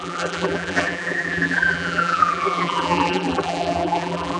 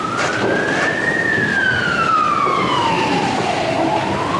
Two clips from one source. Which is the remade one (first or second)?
first